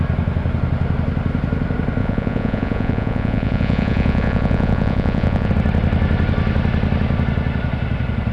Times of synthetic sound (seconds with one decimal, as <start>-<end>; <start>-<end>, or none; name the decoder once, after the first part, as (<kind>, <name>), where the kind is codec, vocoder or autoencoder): 2.0-5.5 (vocoder, Vocos)